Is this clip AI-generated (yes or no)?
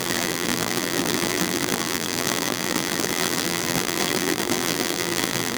yes